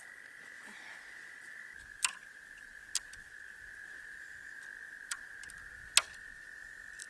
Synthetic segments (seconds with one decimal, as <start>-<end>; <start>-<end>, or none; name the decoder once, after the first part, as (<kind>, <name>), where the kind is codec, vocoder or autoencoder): none